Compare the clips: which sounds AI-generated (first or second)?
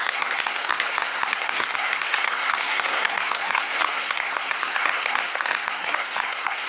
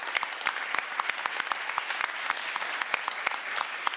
first